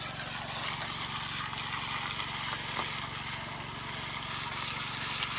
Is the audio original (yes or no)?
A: yes